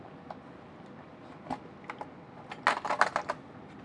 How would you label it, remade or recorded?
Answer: recorded